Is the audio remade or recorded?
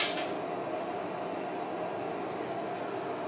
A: recorded